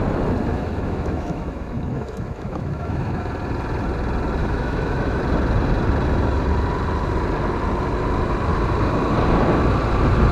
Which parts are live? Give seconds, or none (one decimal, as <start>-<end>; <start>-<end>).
0.0-0.5; 3.3-4.4; 5.2-10.3